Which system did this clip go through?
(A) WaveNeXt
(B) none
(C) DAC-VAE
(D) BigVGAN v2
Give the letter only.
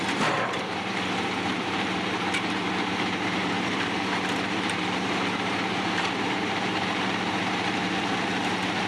D